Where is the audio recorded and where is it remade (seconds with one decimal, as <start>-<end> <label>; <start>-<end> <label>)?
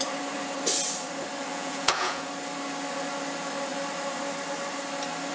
0.0-1.5 recorded; 1.5-2.3 remade; 2.3-5.3 recorded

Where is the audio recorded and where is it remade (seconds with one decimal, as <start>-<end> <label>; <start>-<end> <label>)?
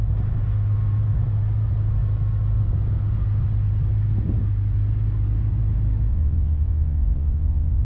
0.0-6.1 recorded; 6.1-7.8 remade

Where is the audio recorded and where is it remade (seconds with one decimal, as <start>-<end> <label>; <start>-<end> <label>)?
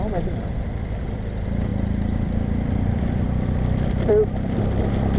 0.0-1.7 recorded; 1.7-4.8 remade; 4.8-5.2 recorded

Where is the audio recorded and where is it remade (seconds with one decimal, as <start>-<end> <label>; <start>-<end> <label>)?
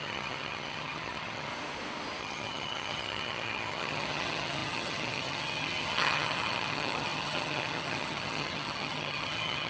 0.0-1.5 remade; 1.5-2.2 recorded; 2.2-9.7 remade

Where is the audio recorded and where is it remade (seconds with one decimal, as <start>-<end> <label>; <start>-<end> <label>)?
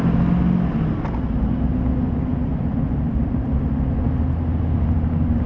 0.0-5.5 recorded